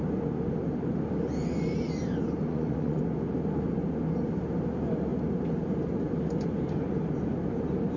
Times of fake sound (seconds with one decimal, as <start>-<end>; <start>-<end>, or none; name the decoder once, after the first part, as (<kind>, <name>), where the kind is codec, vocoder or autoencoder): 2.5-3.0 (vocoder, Vocos)